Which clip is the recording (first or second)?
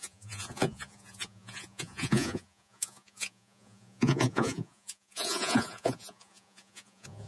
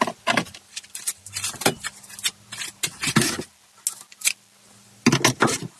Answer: second